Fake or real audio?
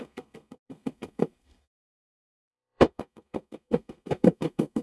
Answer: fake